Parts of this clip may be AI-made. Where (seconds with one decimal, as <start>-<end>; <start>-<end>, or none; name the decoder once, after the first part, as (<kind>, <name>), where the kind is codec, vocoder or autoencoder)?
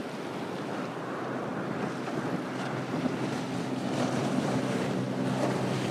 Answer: 0.8-1.5 (vocoder, BigVGAN v2); 3.3-5.9